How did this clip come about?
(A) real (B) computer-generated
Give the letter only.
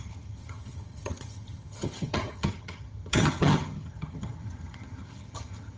B